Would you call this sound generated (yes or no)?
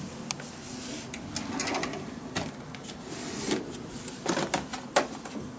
no